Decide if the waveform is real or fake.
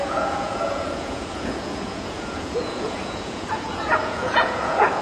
fake